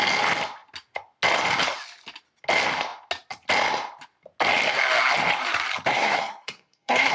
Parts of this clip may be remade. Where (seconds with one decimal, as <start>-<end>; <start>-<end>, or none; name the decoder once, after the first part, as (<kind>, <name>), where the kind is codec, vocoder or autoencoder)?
5.9-7.1 (codec, SNAC)